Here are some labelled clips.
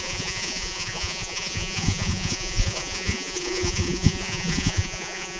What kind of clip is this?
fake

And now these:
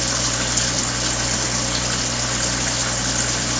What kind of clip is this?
real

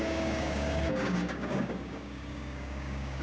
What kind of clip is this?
fake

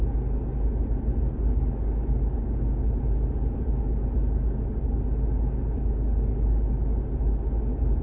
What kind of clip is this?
real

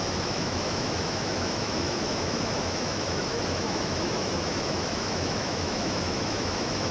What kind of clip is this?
fake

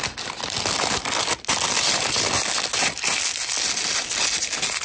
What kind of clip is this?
real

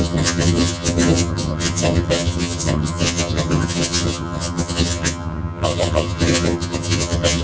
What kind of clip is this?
fake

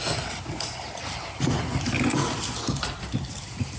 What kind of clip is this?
real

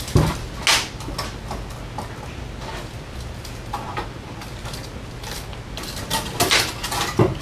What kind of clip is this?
real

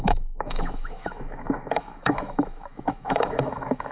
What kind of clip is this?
fake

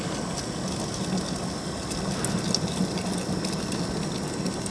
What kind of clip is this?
real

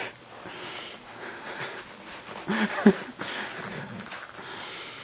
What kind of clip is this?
real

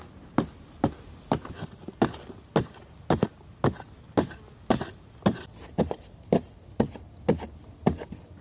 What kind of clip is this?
real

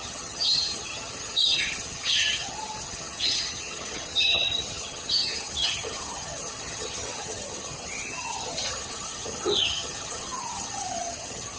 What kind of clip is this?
fake